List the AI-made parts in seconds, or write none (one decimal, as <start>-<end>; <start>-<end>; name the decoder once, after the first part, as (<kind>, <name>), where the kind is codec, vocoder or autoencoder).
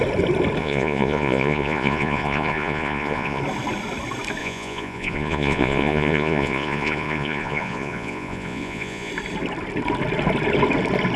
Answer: 0.6-3.4 (vocoder, Vocos); 4.4-9.1